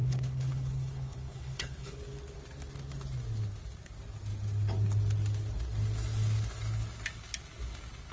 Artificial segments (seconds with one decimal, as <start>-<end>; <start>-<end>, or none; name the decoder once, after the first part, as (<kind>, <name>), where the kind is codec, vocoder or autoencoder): 0.0-2.0 (codec, HILCodec)